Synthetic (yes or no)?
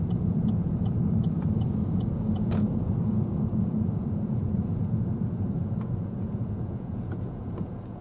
yes